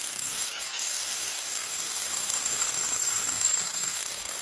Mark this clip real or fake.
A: fake